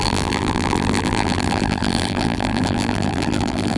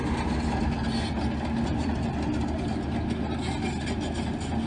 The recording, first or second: second